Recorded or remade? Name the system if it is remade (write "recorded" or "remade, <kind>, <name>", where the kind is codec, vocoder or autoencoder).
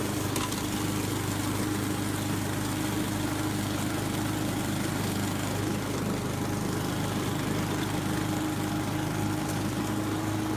recorded